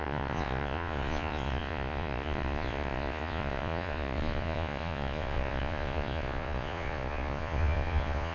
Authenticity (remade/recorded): remade